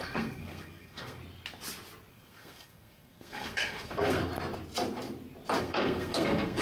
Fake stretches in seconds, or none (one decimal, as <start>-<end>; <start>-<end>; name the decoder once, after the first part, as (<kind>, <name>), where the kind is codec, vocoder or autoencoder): 0.0-1.2 (codec, SNAC); 2.1-4.2; 5.6-6.6